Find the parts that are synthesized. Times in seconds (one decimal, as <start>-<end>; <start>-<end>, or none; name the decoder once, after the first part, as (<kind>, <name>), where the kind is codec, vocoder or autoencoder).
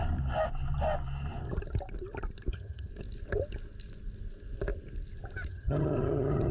2.5-2.9 (vocoder, HiFi-GAN); 5.5-6.5